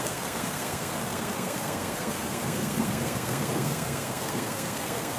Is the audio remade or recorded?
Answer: remade